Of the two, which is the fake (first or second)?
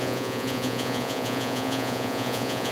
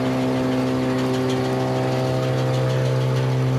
first